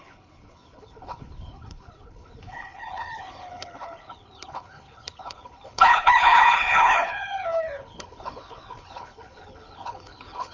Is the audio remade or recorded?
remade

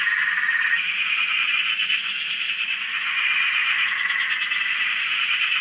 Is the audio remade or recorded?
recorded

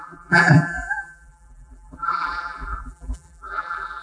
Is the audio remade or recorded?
remade